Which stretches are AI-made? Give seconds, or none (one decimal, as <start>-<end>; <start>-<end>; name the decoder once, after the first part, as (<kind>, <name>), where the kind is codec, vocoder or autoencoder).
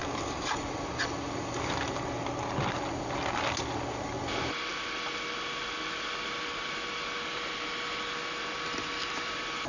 none